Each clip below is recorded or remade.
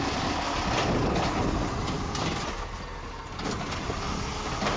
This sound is recorded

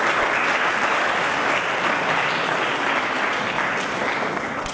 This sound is recorded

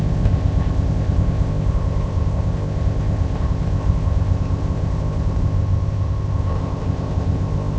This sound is remade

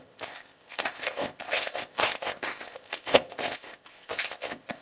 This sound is remade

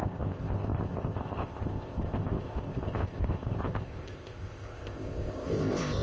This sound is remade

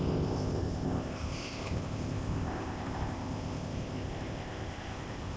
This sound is remade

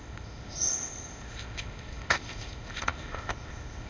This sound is remade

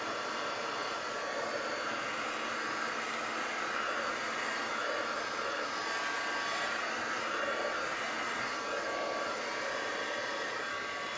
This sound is recorded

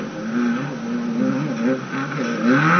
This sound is recorded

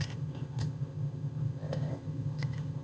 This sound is remade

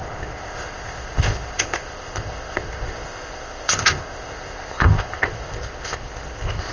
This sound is remade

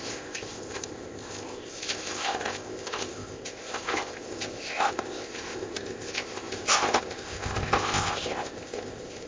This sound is remade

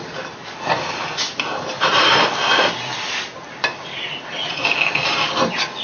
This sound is recorded